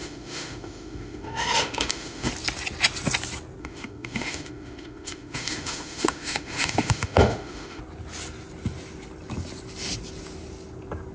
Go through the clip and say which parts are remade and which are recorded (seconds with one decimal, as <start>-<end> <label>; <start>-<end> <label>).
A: 0.0-2.3 remade; 2.3-3.6 recorded; 3.6-7.8 remade; 7.8-11.1 recorded